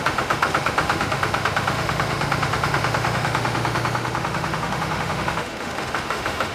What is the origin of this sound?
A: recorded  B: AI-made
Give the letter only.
B